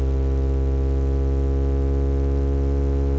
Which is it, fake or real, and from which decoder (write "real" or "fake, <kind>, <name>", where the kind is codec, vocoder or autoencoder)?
real